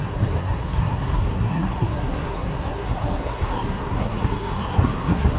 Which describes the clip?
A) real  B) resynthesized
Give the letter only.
B